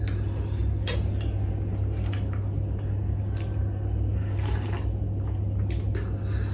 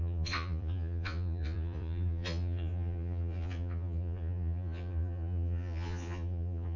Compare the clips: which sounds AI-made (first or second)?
second